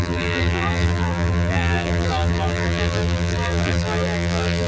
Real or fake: fake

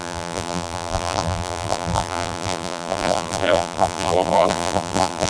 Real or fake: fake